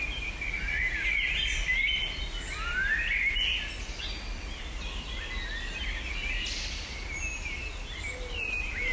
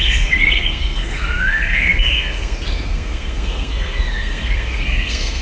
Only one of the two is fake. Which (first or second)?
second